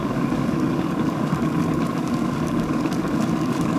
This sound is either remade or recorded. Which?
remade